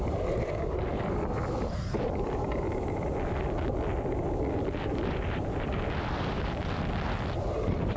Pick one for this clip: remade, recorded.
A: recorded